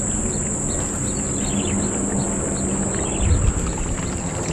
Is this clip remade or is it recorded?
recorded